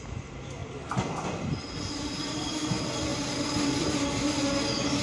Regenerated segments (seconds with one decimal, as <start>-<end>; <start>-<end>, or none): none